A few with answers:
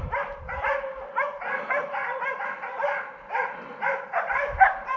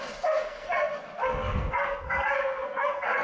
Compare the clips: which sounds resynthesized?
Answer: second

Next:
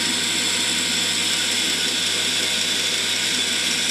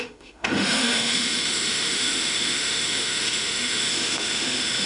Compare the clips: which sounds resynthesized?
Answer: second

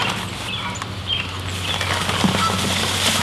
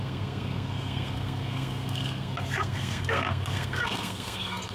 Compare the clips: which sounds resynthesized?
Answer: second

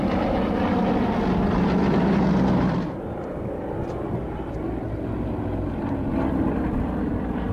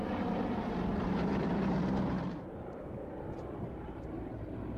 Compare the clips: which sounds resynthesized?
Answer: second